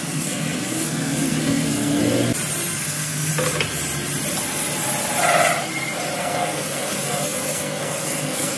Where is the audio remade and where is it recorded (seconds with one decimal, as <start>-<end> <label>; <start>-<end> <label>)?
0.0-2.0 remade; 2.0-2.7 recorded; 2.7-3.3 remade; 3.3-6.2 recorded; 6.2-8.6 remade